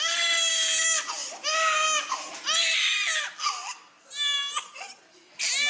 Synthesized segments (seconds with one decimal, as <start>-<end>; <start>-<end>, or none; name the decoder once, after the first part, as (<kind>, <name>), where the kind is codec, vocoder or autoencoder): none